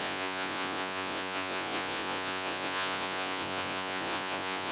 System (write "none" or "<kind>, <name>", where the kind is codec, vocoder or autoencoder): vocoder, Vocos